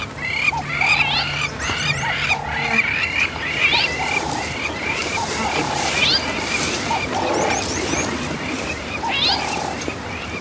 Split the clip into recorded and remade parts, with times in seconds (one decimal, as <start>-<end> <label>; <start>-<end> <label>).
0.0-10.4 recorded